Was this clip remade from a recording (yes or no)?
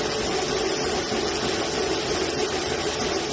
no